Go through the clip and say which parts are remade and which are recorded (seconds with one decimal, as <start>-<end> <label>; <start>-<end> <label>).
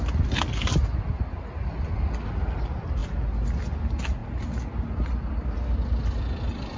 0.0-6.8 recorded